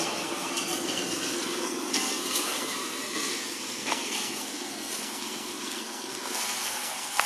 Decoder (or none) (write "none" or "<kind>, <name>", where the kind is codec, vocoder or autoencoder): codec, SNAC